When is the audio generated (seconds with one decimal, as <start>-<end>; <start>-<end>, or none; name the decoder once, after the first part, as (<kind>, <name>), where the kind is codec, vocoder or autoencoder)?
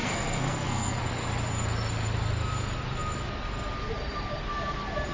0.0-1.0 (codec, SNAC)